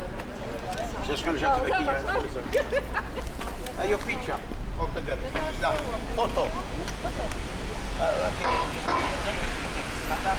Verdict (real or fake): real